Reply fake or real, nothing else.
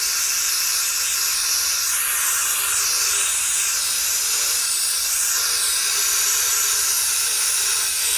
real